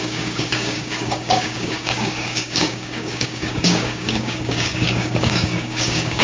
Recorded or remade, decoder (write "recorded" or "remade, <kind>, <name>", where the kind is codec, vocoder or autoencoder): remade, codec, DAC